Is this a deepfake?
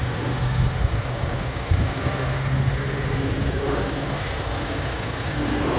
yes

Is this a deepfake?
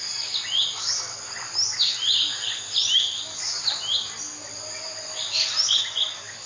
no